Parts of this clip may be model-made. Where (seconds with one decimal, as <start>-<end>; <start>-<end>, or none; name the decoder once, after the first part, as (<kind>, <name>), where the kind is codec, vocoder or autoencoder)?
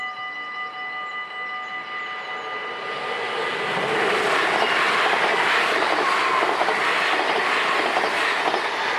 5.3-5.9 (codec, DAC)